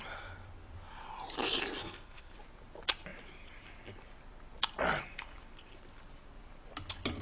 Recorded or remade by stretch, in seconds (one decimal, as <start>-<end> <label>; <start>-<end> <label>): 0.0-1.8 recorded; 1.8-2.3 remade; 2.3-7.2 recorded